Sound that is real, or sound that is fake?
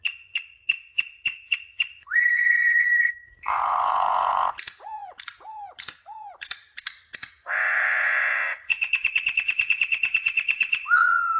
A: fake